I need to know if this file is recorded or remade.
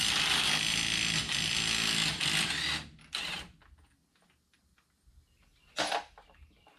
recorded